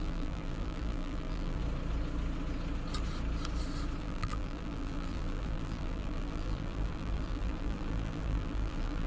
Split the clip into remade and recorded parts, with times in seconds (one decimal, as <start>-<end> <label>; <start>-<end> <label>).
0.0-1.6 remade; 1.6-4.0 recorded; 4.0-9.1 remade